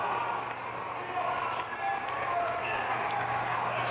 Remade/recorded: recorded